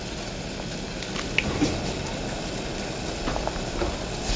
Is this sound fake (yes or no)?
no